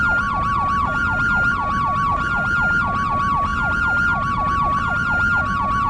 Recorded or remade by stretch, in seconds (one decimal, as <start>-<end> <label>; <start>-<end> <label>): 0.0-5.9 recorded